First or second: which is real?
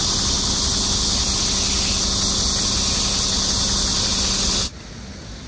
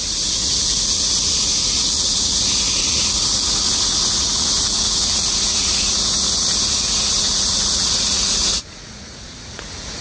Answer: first